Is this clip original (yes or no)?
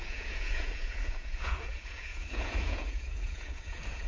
no